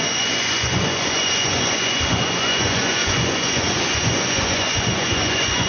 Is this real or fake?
fake